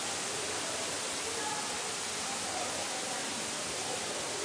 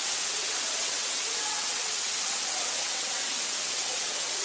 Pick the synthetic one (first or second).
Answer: second